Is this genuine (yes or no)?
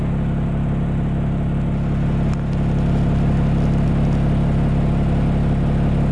yes